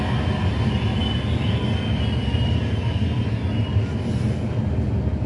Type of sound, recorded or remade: recorded